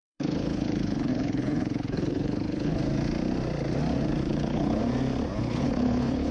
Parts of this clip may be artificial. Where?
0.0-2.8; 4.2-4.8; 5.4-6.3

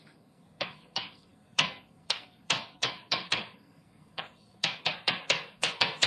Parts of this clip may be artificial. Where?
0.0-6.1

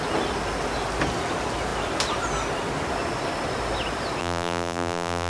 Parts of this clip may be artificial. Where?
4.2-5.3

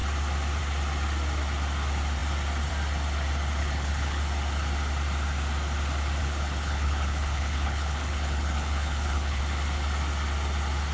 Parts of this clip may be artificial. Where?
3.6-4.2; 6.2-9.4

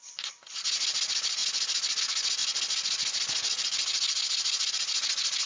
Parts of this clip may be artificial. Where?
none